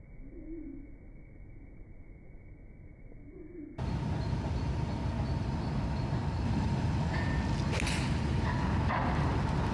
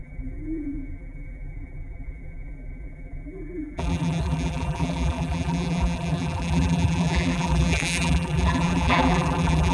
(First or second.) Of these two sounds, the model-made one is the second